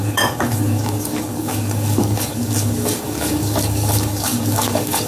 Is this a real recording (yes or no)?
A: no